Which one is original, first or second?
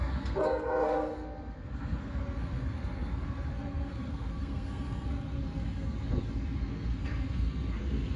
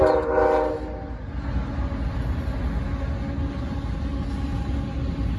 second